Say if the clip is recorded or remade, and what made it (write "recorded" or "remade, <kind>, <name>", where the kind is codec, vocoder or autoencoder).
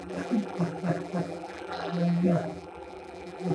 remade, vocoder, BigVGAN v2